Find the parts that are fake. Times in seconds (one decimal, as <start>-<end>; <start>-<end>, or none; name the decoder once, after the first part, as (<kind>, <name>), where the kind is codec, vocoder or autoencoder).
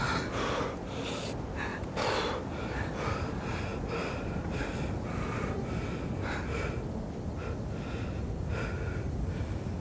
1.7-2.9 (vocoder, BigVGAN v2)